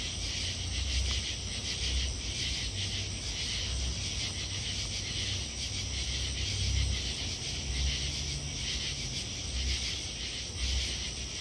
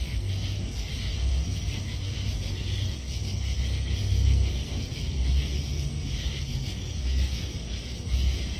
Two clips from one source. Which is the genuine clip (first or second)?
first